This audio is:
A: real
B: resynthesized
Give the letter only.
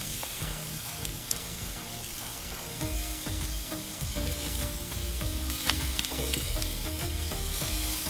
B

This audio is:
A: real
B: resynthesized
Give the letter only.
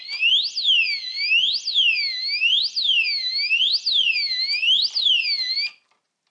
A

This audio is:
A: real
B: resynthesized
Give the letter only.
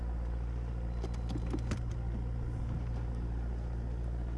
A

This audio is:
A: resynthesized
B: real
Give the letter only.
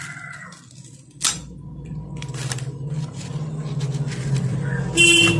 B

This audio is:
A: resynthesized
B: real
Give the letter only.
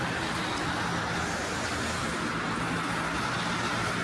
B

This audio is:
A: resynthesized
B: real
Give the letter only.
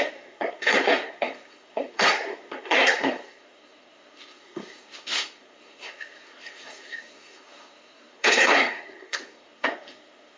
A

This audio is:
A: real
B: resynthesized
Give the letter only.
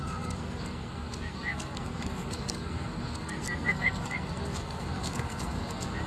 B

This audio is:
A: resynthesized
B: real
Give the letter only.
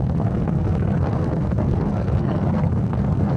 A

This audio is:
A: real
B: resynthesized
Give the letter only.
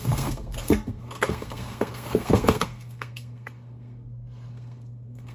B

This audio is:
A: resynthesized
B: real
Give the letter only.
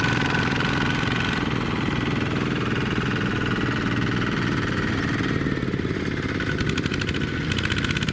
B